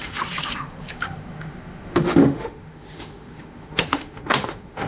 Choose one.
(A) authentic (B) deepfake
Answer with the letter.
B